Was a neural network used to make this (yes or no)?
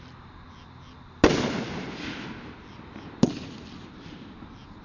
no